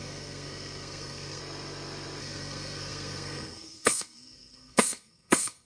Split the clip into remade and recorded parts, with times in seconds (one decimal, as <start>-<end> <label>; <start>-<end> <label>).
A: 0.0-1.4 remade; 1.4-2.2 recorded; 2.2-5.7 remade